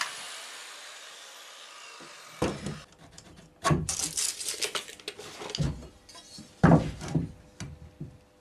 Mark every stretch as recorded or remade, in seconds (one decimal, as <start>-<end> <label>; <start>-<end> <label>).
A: 0.0-8.4 recorded